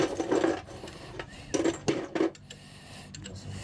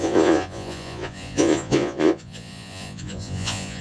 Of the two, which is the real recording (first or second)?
first